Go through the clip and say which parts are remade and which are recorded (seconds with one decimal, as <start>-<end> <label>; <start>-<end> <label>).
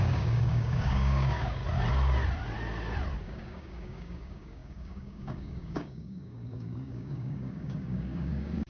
0.0-1.6 remade; 1.6-3.2 recorded; 3.2-8.7 remade